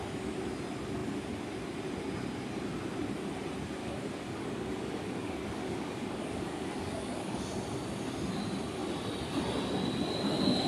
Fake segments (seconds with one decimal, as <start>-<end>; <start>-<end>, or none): 3.8-7.4